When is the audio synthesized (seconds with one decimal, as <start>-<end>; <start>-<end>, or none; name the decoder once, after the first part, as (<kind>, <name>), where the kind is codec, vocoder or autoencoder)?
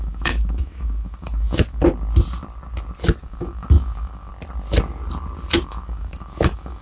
0.0-1.9 (autoencoder, DAC-VAE); 3.2-4.3; 5.6-6.8